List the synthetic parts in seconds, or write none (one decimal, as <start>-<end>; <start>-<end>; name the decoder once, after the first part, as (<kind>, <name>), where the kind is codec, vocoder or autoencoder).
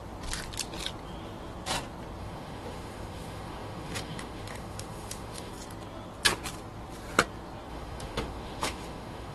2.2-5.5 (autoencoder, DAC-VAE); 7.7-9.3